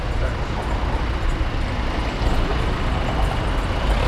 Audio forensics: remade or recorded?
recorded